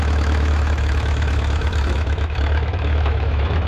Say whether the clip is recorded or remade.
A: remade